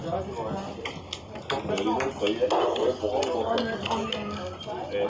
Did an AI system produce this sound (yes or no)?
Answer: no